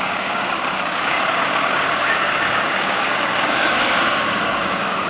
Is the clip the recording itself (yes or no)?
no